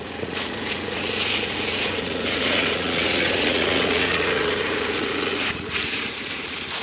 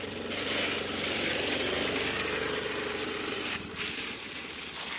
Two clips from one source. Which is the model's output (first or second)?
first